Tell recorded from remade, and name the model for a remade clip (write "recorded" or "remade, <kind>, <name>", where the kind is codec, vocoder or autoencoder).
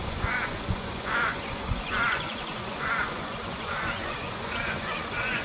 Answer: remade, vocoder, Vocos